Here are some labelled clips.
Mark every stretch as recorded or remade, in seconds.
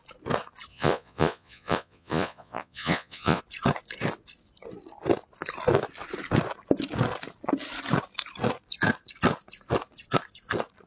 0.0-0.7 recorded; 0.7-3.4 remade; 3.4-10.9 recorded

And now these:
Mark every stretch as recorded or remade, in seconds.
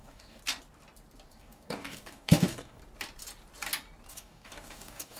0.0-0.4 remade; 0.4-1.3 recorded; 1.3-2.8 remade; 2.8-4.1 recorded; 4.1-5.2 remade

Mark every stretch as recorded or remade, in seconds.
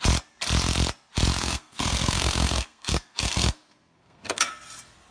0.0-1.4 recorded; 1.4-4.5 remade; 4.5-5.1 recorded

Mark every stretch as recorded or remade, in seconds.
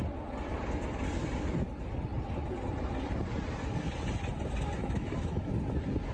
0.0-4.8 recorded; 4.8-5.5 remade; 5.5-6.1 recorded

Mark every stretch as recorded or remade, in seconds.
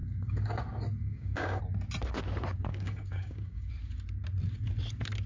0.0-0.6 remade; 0.6-1.0 recorded; 1.0-1.6 remade; 1.6-2.7 recorded; 2.7-3.7 remade; 3.7-5.3 recorded